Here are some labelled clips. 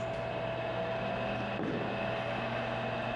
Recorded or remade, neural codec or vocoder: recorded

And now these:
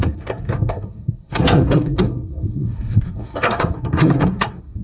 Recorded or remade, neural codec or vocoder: remade, codec, SNAC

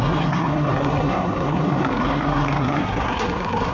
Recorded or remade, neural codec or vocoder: remade, codec, SNAC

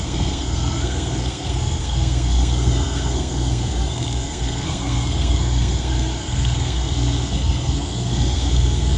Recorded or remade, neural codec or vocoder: remade, codec, SNAC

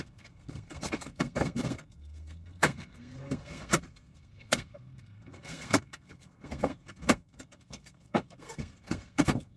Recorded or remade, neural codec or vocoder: remade, codec, SNAC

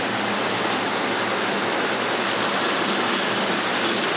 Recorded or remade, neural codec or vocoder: recorded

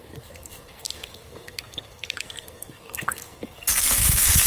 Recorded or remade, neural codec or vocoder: remade, codec, SNAC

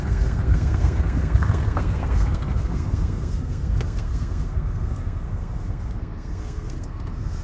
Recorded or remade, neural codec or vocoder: remade, codec, SNAC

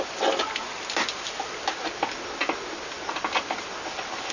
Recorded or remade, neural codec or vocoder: recorded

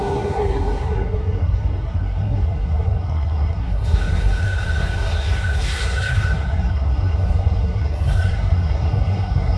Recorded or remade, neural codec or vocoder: remade, codec, SNAC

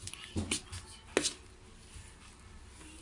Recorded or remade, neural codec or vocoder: recorded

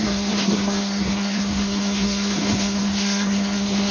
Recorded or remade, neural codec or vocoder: remade, codec, SNAC